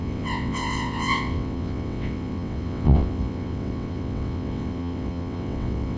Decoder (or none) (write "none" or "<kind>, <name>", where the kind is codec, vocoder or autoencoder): vocoder, WaveNeXt